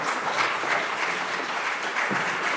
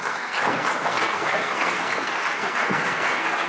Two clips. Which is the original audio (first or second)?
first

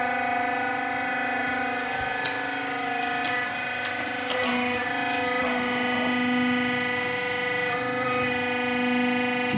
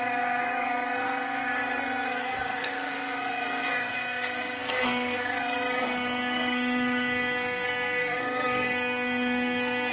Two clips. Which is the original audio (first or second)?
first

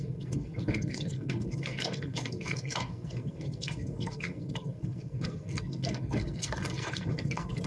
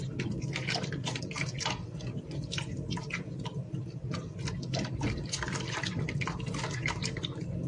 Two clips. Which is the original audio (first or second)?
second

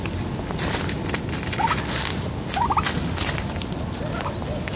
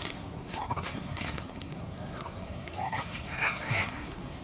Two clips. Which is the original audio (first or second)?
first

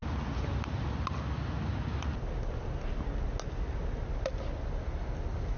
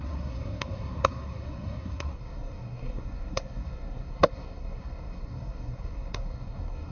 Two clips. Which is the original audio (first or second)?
first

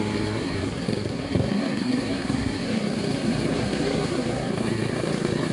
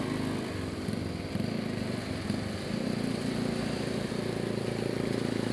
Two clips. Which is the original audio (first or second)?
second